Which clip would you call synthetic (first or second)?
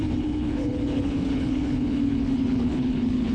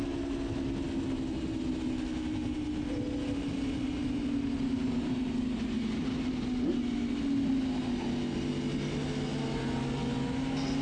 first